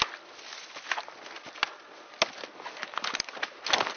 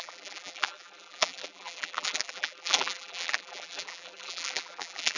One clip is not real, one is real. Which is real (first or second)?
first